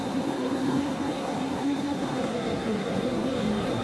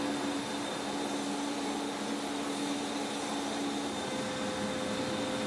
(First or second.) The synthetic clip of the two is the first